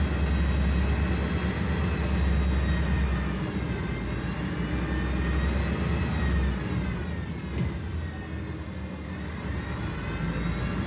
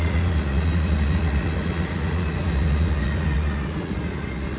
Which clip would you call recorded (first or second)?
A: first